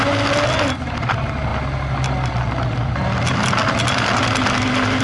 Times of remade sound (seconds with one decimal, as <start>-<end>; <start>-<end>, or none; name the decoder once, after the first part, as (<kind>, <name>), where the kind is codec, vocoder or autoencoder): none